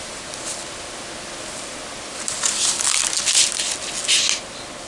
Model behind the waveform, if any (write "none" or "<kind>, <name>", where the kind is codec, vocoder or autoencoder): none